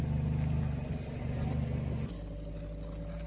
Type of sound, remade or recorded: recorded